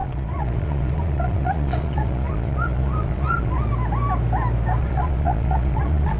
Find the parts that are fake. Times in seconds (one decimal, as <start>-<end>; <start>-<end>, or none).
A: 0.0-3.7; 4.8-6.2

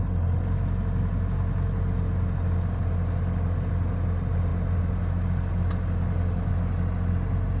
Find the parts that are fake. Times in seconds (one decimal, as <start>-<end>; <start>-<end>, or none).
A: none